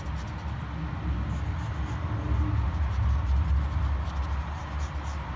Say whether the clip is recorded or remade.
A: recorded